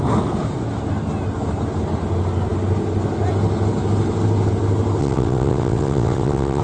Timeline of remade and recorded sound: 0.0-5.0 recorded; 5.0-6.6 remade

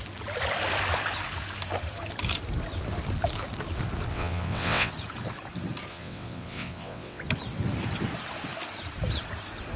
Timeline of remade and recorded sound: 0.0-4.1 recorded; 4.1-4.9 remade; 4.9-5.9 recorded; 5.9-7.2 remade; 7.2-9.8 recorded

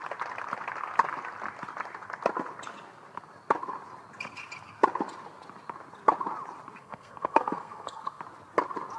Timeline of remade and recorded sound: 0.0-6.8 recorded; 6.8-8.2 remade; 8.2-9.0 recorded

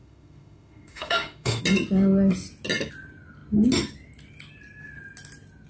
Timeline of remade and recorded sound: 0.0-1.6 remade; 1.6-5.7 recorded

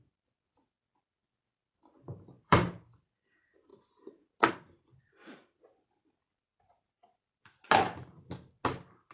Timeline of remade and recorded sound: 0.0-2.1 recorded; 2.1-3.1 remade; 3.1-9.1 recorded

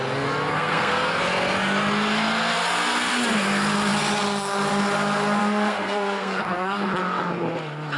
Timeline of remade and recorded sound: 0.0-0.5 recorded; 0.5-1.2 remade; 1.2-5.4 recorded; 5.4-6.9 remade; 6.9-8.0 recorded

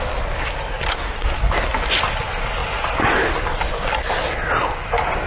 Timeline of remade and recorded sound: 0.0-0.9 recorded; 0.9-1.4 remade; 1.4-5.3 recorded

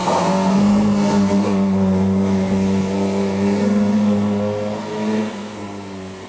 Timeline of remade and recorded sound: 0.0-6.3 remade